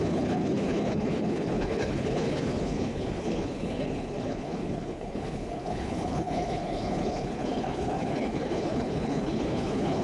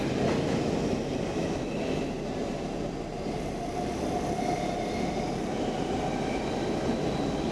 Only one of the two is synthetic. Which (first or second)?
first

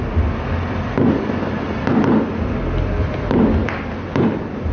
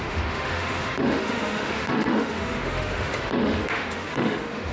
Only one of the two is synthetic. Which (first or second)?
second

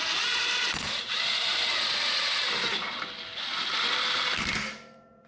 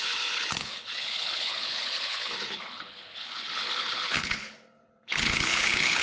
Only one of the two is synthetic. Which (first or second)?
second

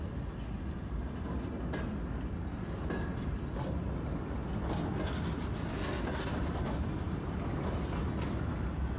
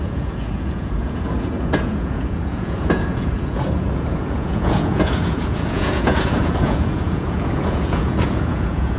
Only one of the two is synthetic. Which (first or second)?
second